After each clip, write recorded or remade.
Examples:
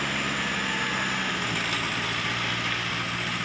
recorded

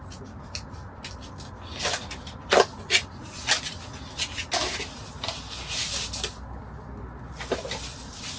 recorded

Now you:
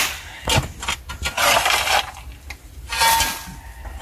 recorded